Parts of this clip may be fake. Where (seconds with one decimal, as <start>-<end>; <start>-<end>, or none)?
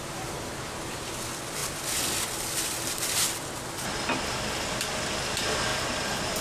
none